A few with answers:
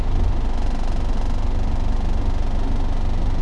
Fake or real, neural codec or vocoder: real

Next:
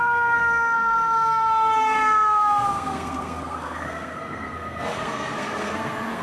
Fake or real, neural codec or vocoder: fake, codec, SNAC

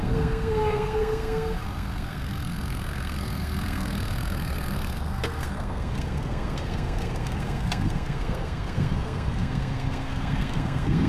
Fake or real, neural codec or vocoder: fake, codec, SNAC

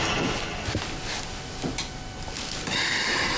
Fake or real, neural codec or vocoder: real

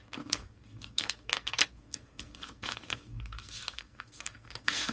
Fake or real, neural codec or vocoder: fake, codec, SNAC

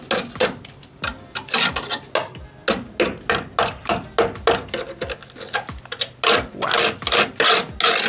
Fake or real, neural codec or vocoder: real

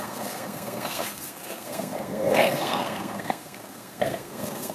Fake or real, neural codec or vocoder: fake, codec, SNAC